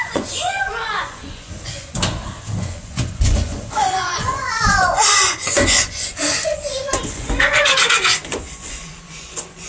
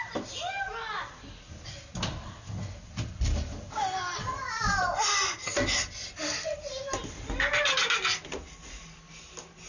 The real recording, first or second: second